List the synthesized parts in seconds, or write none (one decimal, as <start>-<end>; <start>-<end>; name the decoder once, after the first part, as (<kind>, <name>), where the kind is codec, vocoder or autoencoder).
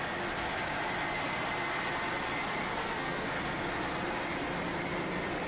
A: 2.8-3.3 (codec, SNAC)